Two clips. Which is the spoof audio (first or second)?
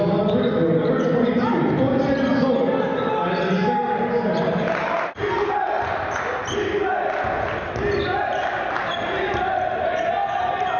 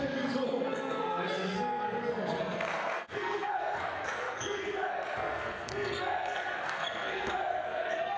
second